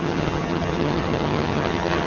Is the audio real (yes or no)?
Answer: no